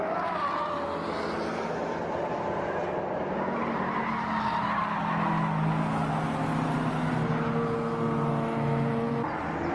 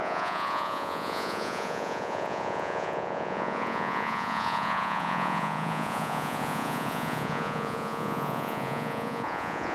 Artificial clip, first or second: second